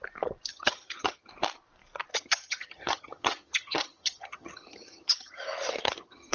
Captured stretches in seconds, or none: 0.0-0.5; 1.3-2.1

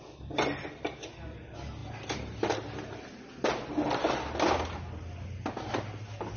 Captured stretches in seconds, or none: 0.0-6.4

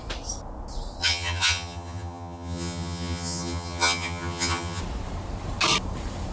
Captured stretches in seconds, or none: 0.0-1.0; 4.8-6.3